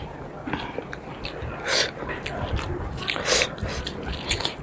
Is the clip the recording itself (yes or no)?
yes